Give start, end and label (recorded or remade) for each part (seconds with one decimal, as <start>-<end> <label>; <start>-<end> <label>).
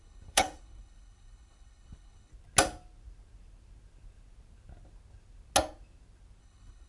0.0-2.3 remade; 2.3-6.4 recorded; 6.4-6.9 remade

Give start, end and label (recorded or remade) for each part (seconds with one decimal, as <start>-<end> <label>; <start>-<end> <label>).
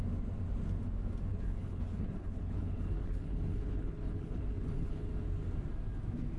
0.0-1.3 recorded; 1.3-5.1 remade; 5.1-6.4 recorded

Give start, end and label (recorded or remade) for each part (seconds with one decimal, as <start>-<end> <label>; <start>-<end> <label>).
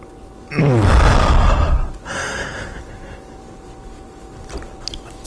0.0-5.3 recorded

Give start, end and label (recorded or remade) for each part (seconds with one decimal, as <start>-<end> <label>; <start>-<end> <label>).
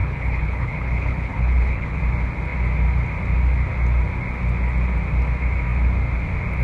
0.0-2.0 remade; 2.0-6.6 recorded